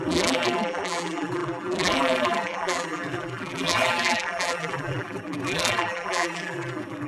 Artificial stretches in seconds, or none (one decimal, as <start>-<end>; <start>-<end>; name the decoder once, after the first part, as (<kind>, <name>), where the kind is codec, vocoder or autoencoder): 0.0-7.1 (vocoder, BigVGAN v2)